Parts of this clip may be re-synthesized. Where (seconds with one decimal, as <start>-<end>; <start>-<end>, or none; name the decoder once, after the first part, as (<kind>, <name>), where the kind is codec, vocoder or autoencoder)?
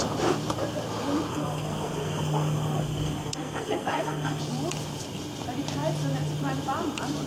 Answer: 1.3-4.4 (codec, SNAC)